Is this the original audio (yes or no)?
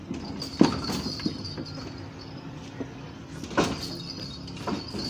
yes